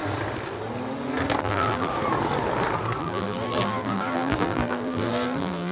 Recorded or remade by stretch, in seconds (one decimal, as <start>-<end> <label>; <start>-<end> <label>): 0.0-1.4 recorded; 1.4-1.9 remade; 1.9-3.0 recorded; 3.0-5.7 remade